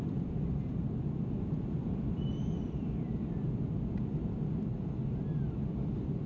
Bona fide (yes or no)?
yes